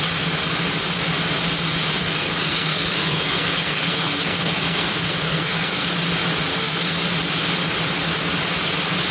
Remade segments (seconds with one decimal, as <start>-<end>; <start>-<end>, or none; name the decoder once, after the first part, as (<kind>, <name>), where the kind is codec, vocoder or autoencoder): 2.0-5.9 (codec, SNAC); 6.5-7.0